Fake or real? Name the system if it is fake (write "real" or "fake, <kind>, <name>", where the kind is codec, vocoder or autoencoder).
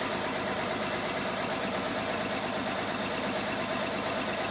real